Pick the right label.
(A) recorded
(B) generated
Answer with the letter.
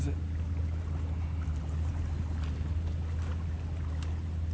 A